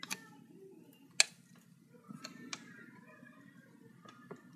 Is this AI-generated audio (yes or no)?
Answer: no